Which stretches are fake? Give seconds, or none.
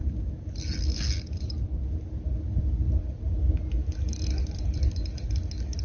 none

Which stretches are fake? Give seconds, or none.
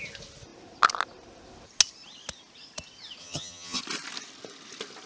3.2-3.8 (vocoder, HiFi-GAN)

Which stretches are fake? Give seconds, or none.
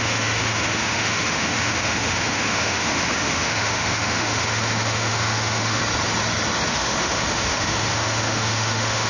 0.0-5.8 (autoencoder, DAC-VAE); 6.7-9.1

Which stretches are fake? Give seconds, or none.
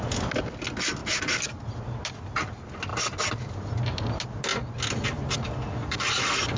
none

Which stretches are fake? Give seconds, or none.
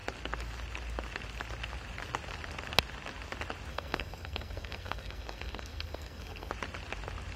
3.7-6.5 (codec, SNAC)